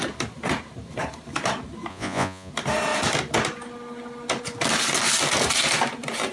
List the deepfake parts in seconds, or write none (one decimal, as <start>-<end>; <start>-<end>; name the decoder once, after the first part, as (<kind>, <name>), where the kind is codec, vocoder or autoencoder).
1.9-2.5 (vocoder, Vocos)